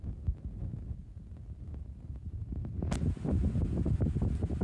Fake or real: real